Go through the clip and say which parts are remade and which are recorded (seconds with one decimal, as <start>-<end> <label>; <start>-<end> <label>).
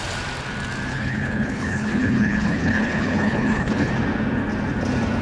0.0-0.9 recorded; 0.9-3.9 remade; 3.9-5.2 recorded